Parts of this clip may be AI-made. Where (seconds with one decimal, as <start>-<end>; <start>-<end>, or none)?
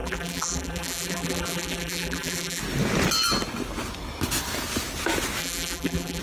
0.0-2.6; 5.4-6.2